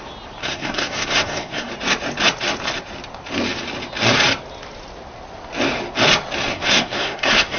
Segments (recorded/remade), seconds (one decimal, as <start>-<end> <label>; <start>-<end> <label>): 0.0-0.4 recorded; 0.4-1.7 remade; 1.7-6.5 recorded; 6.5-7.6 remade